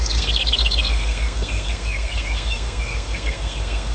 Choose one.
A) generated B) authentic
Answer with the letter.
A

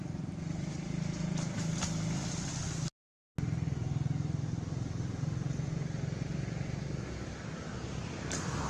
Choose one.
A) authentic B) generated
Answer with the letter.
A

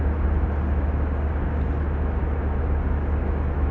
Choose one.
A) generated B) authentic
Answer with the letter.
B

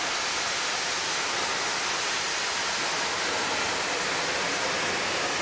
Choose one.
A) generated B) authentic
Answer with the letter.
B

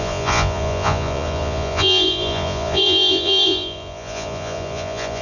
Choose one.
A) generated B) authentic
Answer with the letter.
A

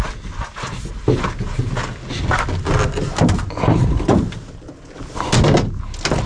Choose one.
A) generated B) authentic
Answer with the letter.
B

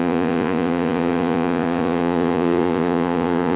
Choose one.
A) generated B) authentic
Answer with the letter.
A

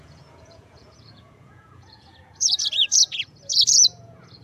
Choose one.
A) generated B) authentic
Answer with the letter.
A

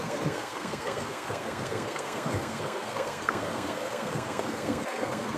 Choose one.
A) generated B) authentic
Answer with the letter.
A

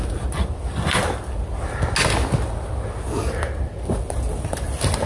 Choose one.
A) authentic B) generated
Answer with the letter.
A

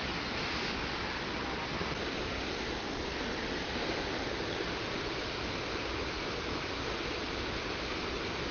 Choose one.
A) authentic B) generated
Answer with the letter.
A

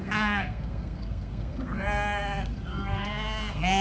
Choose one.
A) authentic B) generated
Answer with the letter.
B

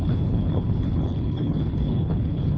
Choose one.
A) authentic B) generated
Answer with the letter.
B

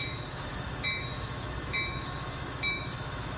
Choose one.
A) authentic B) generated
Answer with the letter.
B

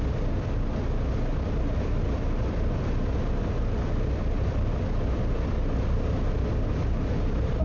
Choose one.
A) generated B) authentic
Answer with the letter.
B